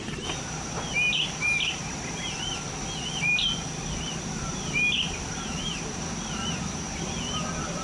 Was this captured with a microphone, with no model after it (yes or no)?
yes